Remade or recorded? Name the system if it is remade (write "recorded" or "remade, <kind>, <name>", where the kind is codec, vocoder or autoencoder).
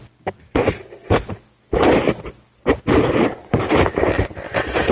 recorded